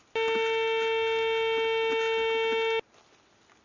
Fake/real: real